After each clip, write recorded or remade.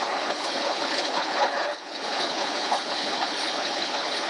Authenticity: remade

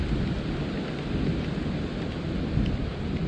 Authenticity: recorded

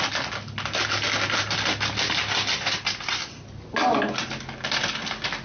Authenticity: recorded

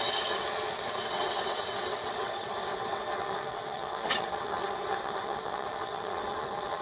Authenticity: remade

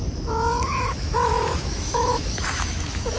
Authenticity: remade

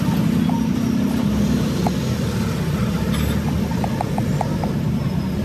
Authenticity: recorded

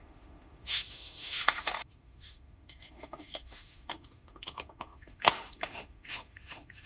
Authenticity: remade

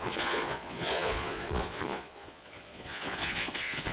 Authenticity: remade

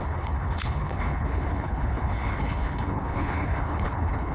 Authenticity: remade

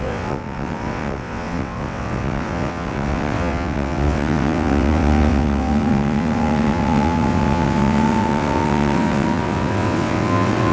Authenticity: remade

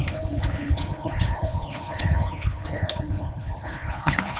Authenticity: remade